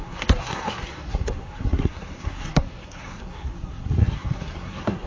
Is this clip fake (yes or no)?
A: yes